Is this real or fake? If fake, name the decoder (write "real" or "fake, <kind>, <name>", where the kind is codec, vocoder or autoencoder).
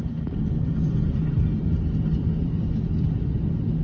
real